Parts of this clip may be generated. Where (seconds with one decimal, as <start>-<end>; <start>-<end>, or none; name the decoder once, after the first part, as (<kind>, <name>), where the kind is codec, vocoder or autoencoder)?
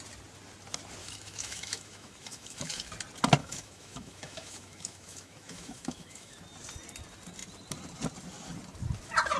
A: 1.0-2.9 (autoencoder, DAC-VAE); 3.4-6.4